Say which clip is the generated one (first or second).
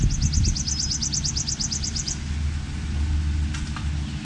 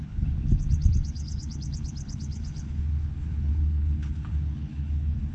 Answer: second